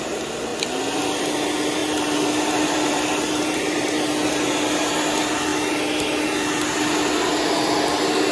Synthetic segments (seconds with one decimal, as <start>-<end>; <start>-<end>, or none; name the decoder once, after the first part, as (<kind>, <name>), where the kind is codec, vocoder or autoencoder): 1.8-4.0 (vocoder, BigVGAN v2)